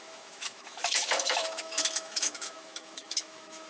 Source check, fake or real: fake